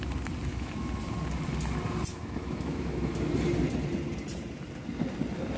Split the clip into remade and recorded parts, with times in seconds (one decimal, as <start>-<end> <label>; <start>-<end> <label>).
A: 0.0-0.5 recorded; 0.5-1.0 remade; 1.0-2.1 recorded; 2.1-3.1 remade; 3.1-5.6 recorded

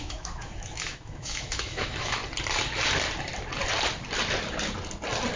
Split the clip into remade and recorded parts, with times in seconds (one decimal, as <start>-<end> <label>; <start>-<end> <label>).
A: 0.0-2.2 remade; 2.2-5.4 recorded